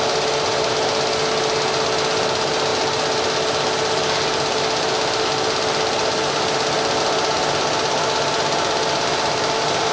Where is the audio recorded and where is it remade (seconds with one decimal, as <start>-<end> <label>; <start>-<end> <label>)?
0.0-9.9 recorded